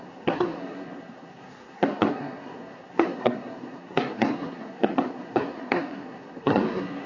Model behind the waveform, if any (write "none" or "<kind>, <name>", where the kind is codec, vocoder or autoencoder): codec, SNAC